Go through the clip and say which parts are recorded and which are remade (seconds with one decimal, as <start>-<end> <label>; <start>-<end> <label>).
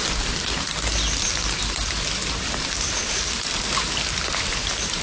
0.0-5.0 recorded